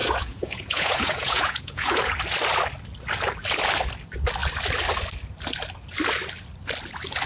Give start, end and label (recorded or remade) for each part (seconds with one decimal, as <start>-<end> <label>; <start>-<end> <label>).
0.0-2.1 remade; 2.1-7.3 recorded